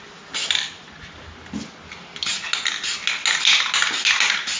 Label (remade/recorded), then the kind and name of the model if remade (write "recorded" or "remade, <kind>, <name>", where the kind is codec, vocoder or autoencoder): recorded